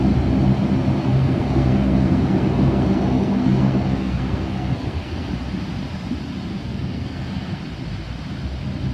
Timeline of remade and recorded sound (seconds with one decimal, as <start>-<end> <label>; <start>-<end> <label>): 0.0-1.0 recorded; 1.0-5.3 remade; 5.3-6.5 recorded; 6.5-7.6 remade; 7.6-8.9 recorded